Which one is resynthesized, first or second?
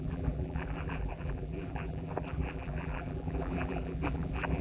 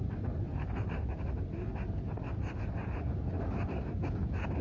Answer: first